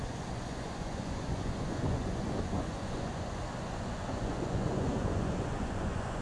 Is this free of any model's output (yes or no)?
no